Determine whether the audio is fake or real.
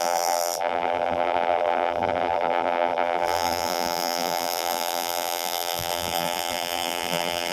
fake